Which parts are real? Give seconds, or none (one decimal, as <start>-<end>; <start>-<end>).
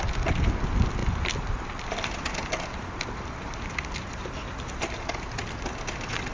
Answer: 0.0-6.3